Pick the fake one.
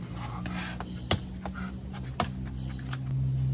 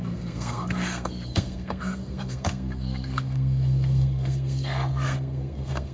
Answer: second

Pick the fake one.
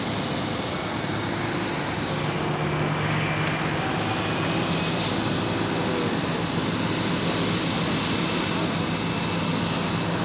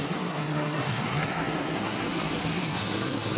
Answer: second